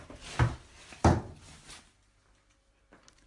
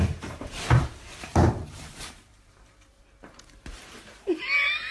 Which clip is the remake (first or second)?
second